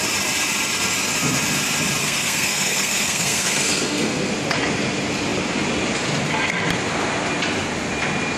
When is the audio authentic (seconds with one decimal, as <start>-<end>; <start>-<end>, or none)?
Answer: 0.0-2.0; 4.3-8.4